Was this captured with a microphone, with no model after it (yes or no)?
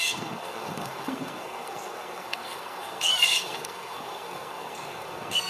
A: no